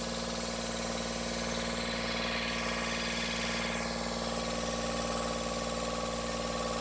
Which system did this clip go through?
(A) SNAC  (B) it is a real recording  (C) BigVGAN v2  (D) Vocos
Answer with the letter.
B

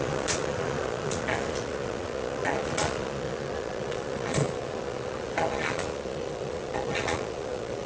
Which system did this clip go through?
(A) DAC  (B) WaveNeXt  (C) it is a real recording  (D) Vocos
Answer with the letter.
D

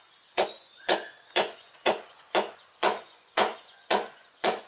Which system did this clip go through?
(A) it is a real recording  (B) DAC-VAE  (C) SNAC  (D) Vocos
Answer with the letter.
D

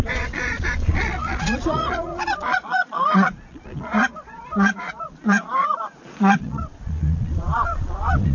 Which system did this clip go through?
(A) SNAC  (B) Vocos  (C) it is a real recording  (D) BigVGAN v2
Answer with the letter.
B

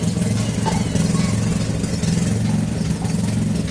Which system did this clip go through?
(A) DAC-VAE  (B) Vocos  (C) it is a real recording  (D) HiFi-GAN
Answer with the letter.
C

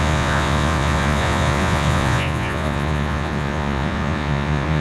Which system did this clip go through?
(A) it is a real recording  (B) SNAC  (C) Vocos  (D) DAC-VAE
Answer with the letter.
C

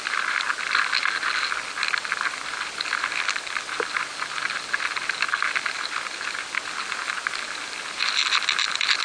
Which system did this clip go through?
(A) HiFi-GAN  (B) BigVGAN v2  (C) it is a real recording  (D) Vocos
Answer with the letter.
C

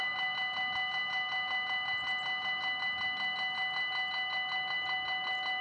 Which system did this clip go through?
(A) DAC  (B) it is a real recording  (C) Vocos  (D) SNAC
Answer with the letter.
B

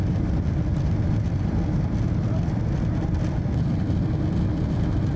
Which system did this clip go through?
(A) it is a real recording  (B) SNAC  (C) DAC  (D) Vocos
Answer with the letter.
A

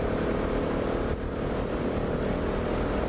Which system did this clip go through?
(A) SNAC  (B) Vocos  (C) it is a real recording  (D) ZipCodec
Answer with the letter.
C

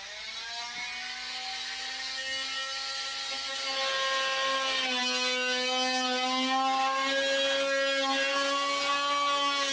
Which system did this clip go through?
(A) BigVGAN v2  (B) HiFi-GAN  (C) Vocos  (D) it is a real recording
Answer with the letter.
D